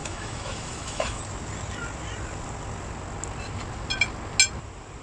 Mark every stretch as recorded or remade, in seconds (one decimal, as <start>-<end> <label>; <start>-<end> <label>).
0.0-1.2 remade; 1.2-5.0 recorded